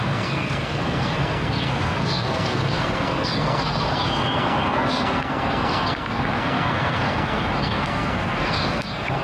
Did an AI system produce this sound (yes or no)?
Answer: yes